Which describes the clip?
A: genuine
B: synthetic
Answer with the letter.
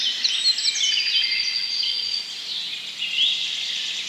A